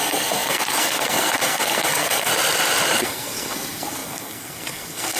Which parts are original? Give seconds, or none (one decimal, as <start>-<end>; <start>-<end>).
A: 2.3-3.0